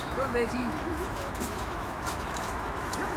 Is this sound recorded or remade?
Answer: remade